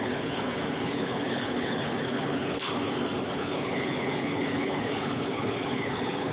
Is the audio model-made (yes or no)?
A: yes